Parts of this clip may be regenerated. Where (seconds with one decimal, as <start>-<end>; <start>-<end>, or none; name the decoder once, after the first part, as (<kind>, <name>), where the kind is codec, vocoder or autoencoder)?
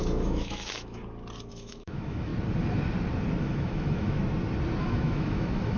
0.0-1.0 (autoencoder, DAC-VAE); 1.5-2.3; 3.4-4.2; 4.8-5.8